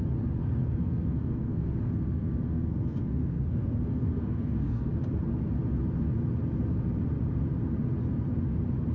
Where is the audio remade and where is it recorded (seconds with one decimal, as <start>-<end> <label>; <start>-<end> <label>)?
0.0-0.4 recorded; 0.4-4.9 remade; 4.9-8.9 recorded